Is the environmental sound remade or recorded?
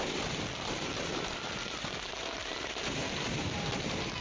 recorded